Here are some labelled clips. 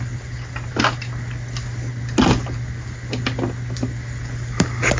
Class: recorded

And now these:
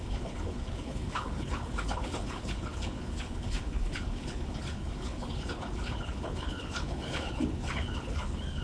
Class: remade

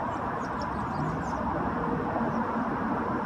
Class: recorded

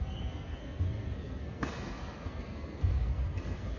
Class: remade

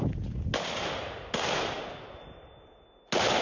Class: recorded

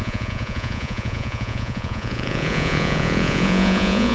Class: remade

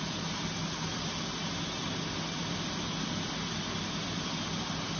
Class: recorded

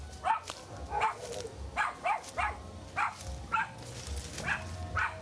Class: recorded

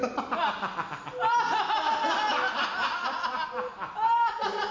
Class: recorded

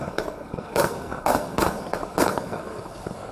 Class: remade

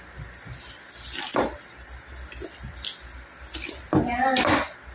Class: recorded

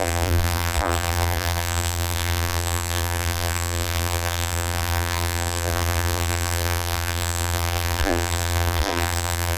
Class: remade